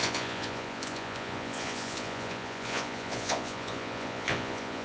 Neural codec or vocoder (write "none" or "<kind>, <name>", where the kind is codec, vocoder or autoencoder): vocoder, Vocos